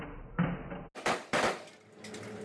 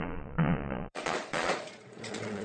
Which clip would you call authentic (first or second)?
first